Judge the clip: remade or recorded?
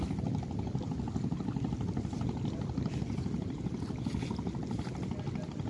recorded